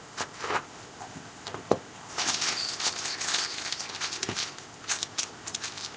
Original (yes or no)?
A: no